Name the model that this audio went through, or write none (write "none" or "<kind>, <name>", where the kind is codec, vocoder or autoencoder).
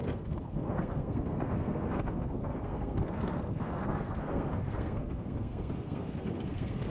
codec, SNAC